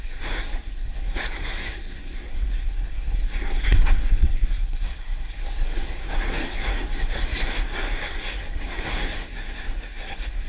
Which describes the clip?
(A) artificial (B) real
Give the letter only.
A